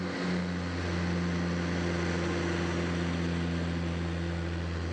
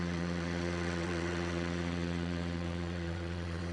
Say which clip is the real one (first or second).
first